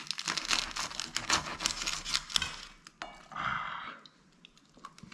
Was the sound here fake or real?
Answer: real